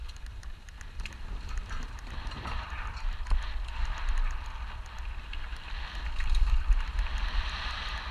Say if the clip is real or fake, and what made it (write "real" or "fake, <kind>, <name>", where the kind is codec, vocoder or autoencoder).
real